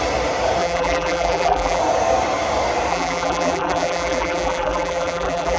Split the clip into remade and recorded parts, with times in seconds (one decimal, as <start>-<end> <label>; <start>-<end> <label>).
0.0-0.6 recorded; 0.6-1.8 remade; 1.8-2.9 recorded; 2.9-5.6 remade